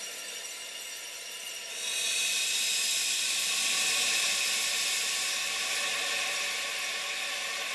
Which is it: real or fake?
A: real